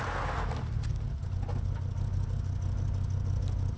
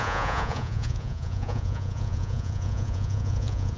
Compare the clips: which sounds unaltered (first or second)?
first